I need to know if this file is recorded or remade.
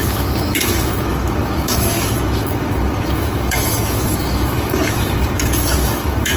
remade